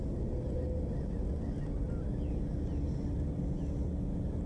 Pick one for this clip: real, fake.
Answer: real